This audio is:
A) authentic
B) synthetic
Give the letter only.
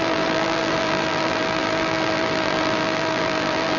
B